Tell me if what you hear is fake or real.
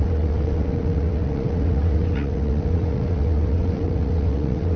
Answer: fake